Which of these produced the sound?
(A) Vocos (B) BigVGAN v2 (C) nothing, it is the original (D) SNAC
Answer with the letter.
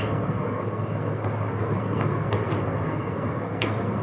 D